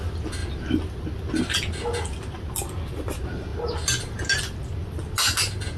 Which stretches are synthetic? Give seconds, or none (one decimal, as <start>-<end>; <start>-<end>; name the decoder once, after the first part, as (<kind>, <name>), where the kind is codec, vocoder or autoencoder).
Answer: none